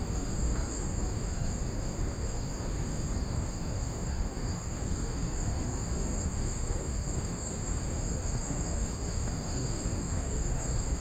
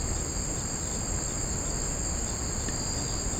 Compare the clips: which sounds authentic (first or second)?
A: second